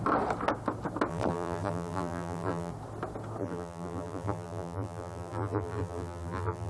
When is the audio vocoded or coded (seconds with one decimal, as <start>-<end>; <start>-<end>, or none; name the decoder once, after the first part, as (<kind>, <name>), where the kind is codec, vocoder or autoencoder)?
1.1-2.7 (vocoder, BigVGAN v2); 3.4-6.7